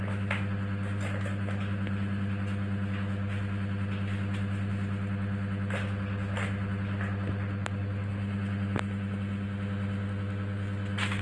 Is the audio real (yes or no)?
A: yes